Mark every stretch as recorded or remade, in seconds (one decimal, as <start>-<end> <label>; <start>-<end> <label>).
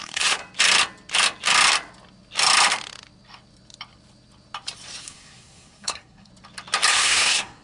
0.0-0.4 remade; 0.4-5.0 recorded; 5.0-6.3 remade; 6.3-6.9 recorded; 6.9-7.6 remade